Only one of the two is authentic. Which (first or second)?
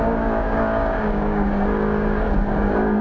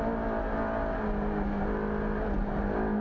second